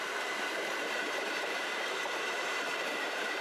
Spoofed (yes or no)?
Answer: yes